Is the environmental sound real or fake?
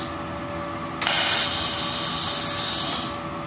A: real